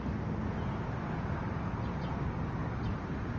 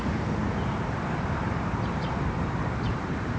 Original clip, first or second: first